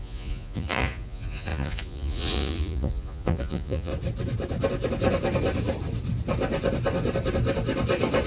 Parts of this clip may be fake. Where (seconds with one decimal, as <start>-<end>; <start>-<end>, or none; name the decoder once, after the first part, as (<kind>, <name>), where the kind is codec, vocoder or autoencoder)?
0.0-3.9 (vocoder, Vocos)